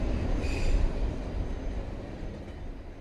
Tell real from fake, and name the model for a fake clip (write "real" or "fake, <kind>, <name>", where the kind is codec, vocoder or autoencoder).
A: real